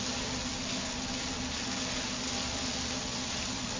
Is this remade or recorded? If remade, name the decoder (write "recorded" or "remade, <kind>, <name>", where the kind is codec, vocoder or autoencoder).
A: recorded